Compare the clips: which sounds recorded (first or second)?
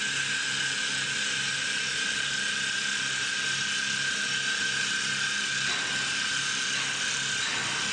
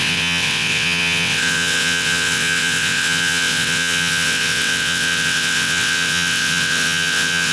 first